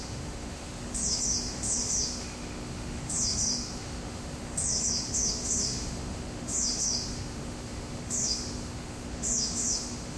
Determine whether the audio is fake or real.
fake